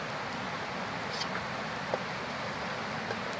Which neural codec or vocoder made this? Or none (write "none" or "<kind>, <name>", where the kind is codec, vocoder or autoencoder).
none